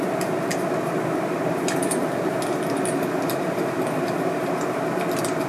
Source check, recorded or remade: remade